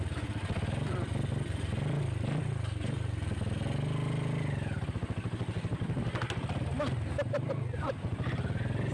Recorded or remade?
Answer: recorded